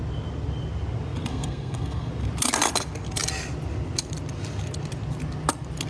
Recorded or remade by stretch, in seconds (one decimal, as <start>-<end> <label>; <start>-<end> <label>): 0.0-1.3 recorded; 1.3-2.1 remade; 2.1-5.9 recorded